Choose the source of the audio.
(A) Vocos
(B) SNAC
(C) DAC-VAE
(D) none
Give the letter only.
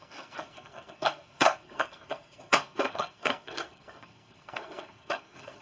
B